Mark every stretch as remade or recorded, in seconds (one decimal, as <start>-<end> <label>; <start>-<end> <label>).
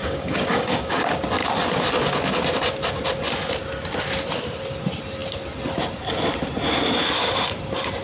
0.0-1.0 remade; 1.0-8.0 recorded